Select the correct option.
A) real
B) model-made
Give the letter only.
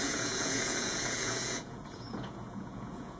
B